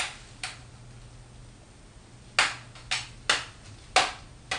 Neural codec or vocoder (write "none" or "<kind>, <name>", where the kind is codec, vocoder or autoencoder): none